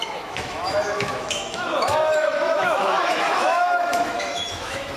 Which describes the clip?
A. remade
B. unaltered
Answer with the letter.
A